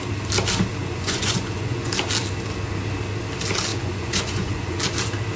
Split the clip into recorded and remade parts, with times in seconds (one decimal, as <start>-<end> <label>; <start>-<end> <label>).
0.0-0.8 recorded; 0.8-1.9 remade; 1.9-3.7 recorded; 3.7-4.8 remade; 4.8-5.4 recorded